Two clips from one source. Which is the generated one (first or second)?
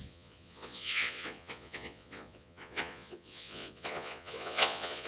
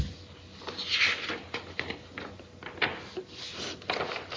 first